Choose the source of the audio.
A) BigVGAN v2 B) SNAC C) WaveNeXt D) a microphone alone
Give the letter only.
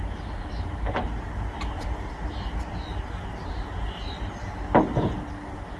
D